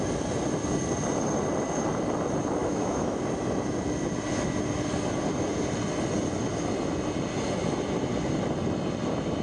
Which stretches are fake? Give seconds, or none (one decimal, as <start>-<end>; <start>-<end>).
2.6-3.2